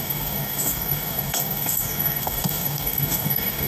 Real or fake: fake